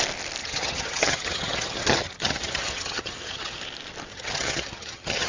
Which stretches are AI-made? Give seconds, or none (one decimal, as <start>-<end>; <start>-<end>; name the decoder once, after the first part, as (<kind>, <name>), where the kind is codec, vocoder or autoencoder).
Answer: 0.4-3.6 (vocoder, HiFi-GAN); 4.1-5.3